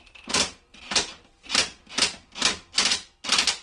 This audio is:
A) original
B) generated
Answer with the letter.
A